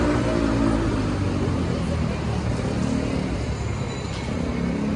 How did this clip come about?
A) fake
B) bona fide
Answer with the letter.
B